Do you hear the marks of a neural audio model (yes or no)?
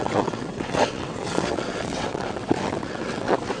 yes